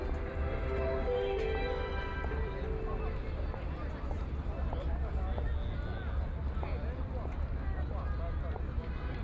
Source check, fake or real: real